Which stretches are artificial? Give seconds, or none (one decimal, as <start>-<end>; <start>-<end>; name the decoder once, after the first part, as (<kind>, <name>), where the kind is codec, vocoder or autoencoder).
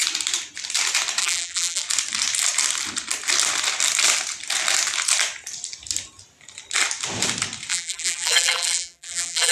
1.2-1.8 (vocoder, BigVGAN v2); 7.7-9.5